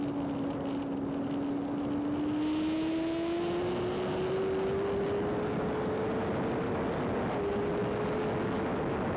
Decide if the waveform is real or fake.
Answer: real